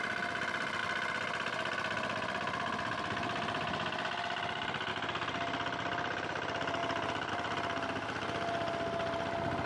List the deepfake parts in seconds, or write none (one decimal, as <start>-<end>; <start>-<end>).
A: none